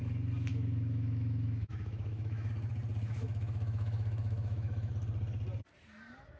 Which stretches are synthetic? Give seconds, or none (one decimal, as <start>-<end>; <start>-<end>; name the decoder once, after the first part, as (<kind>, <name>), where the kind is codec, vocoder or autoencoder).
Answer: 0.5-2.5 (autoencoder, DAC-VAE); 3.1-4.9